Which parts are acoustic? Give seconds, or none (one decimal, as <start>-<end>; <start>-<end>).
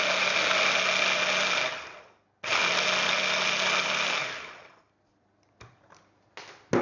0.0-6.8